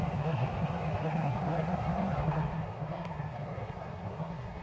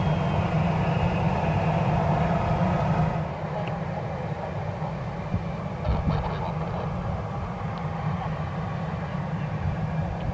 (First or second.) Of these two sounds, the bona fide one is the second